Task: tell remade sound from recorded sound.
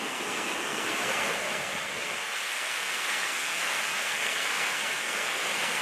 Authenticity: remade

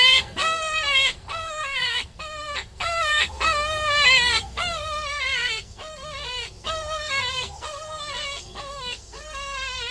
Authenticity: remade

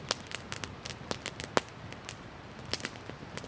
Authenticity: recorded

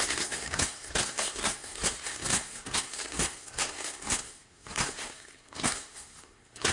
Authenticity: remade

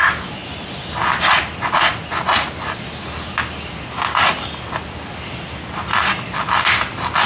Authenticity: recorded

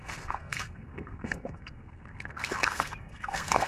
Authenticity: remade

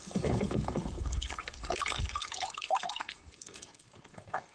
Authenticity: remade